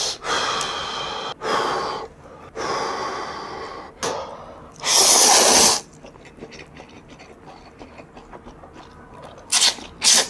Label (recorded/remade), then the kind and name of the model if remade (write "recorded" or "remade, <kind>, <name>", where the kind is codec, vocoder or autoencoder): recorded